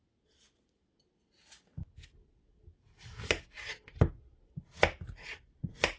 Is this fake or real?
real